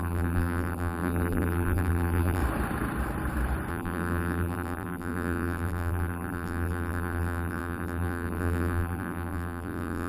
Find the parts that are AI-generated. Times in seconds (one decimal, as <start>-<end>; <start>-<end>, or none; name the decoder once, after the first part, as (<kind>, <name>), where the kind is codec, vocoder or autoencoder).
0.0-2.4 (vocoder, BigVGAN v2); 3.7-10.1